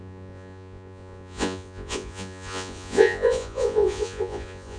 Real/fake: fake